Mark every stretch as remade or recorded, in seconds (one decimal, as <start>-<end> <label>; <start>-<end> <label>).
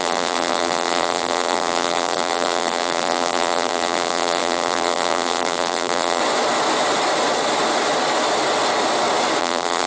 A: 0.0-6.2 remade; 6.2-9.4 recorded; 9.4-9.9 remade